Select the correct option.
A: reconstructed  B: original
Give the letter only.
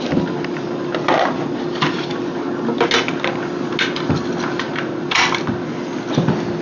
B